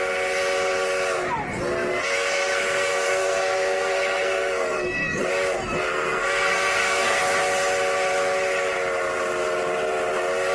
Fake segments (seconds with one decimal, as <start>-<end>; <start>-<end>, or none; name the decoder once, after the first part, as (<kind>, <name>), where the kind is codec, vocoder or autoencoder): 1.9-5.3 (codec, SNAC); 5.9-7.2